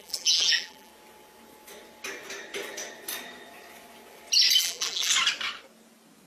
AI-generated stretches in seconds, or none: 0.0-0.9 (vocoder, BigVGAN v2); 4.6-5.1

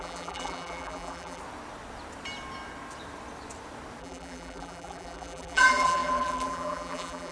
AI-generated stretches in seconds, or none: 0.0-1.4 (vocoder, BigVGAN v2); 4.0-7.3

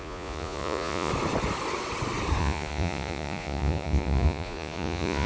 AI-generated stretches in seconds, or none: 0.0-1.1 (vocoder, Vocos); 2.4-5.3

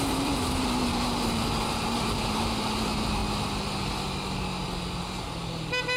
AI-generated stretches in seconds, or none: 0.0-3.2 (vocoder, BigVGAN v2); 5.6-6.0

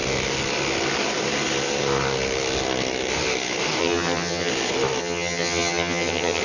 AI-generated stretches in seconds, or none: 3.8-4.5 (vocoder, HiFi-GAN); 5.0-6.4